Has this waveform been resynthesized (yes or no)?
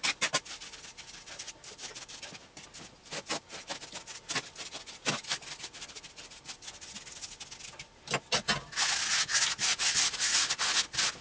no